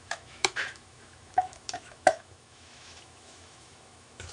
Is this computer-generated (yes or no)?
yes